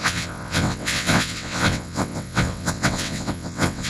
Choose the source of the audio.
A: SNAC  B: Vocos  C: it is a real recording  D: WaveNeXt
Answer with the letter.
D